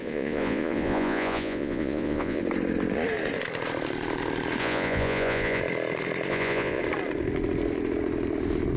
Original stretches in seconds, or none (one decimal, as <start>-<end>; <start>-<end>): 2.4-4.6; 5.6-6.3; 6.8-8.8